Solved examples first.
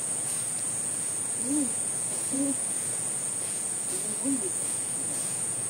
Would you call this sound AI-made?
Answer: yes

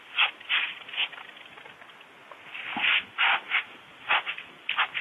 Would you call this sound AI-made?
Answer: no